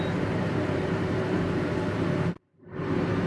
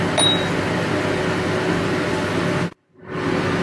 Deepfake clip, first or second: first